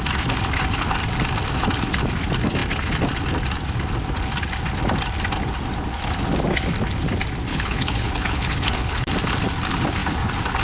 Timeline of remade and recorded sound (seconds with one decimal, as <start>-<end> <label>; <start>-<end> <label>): 0.0-7.5 recorded; 7.5-9.1 remade; 9.1-10.6 recorded